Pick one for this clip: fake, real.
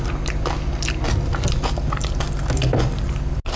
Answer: real